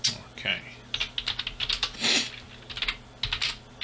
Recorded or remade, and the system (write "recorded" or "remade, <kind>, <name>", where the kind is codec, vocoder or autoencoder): recorded